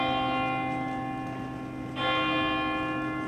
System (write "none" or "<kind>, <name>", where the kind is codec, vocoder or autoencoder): none